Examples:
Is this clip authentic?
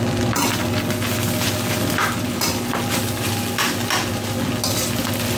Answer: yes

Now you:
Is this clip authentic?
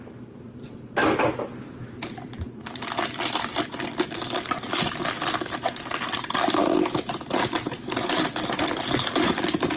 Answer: yes